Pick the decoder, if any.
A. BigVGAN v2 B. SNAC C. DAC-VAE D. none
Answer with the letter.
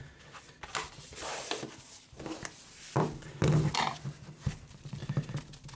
D